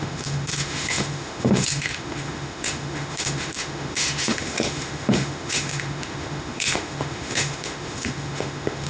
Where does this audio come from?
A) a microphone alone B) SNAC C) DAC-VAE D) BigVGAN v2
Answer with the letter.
C